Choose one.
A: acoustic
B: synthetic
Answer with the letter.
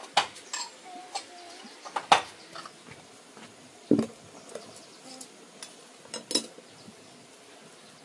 A